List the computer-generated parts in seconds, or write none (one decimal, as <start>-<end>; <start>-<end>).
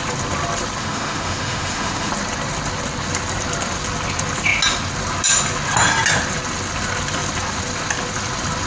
0.8-2.1